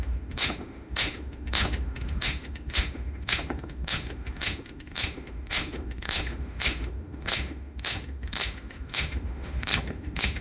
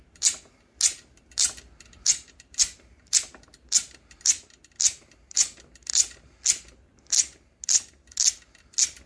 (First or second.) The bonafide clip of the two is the second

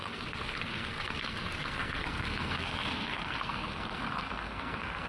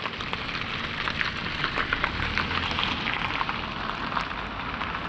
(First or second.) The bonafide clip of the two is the second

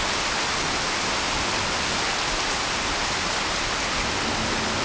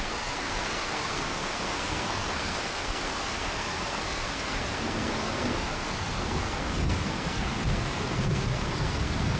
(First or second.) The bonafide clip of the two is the first